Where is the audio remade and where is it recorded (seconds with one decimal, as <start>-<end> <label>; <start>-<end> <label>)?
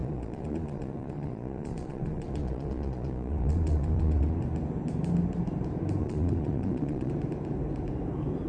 0.0-4.4 remade; 4.4-6.0 recorded; 6.0-7.1 remade; 7.1-8.5 recorded